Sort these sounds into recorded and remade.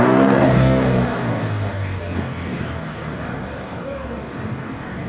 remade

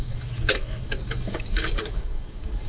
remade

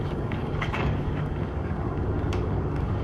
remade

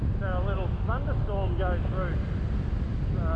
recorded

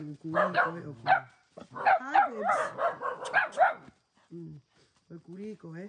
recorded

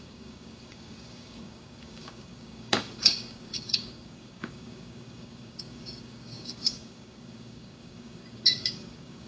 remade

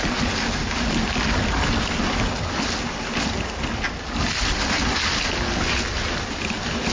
recorded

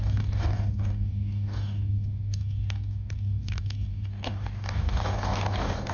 remade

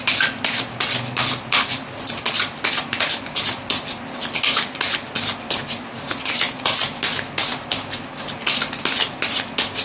recorded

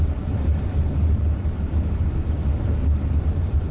recorded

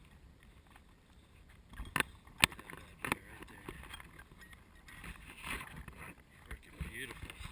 recorded